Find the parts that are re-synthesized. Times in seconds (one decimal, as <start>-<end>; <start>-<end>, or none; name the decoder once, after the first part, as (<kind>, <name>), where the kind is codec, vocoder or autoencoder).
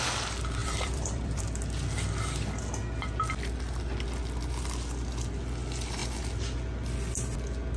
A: 0.6-1.4 (vocoder, BigVGAN v2)